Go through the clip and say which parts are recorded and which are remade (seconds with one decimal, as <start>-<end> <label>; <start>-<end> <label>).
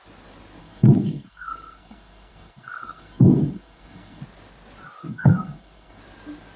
0.0-0.6 recorded; 0.6-4.2 remade; 4.2-5.0 recorded; 5.0-6.0 remade; 6.0-6.6 recorded